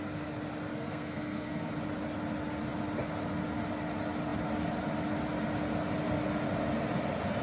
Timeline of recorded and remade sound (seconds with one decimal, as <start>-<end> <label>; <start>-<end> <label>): 0.0-0.7 recorded; 0.7-1.7 remade; 1.7-7.4 recorded